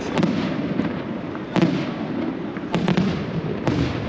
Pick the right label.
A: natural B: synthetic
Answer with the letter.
A